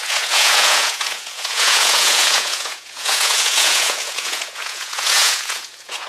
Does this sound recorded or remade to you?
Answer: remade